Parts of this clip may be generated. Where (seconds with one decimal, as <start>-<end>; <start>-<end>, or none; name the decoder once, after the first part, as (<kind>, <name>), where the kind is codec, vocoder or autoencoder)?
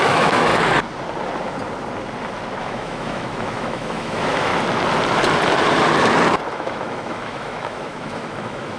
0.0-0.5 (autoencoder, DAC-VAE); 2.6-4.5; 6.5-8.8